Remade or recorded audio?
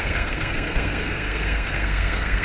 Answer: remade